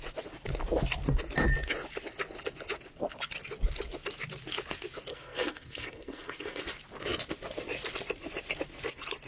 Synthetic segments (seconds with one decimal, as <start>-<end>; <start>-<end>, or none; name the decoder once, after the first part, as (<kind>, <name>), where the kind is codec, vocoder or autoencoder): 5.1-6.6 (codec, SNAC)